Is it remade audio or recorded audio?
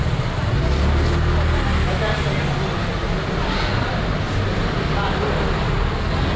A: recorded